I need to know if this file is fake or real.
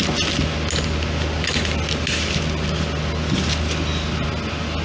real